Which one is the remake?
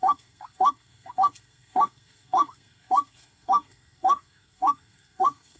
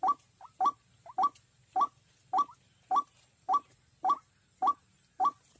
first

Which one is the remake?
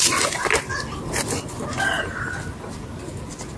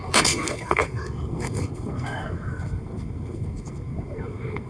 second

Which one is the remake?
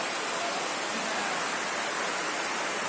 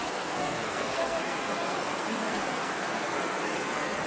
second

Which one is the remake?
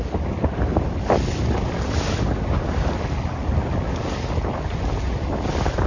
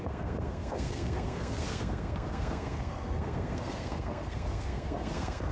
second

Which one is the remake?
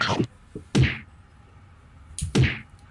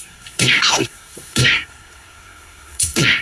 second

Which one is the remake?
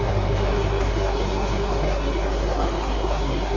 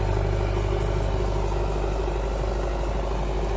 first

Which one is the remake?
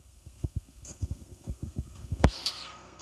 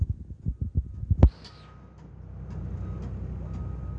first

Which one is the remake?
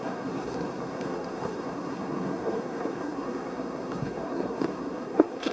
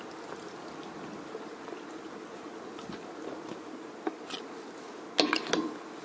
first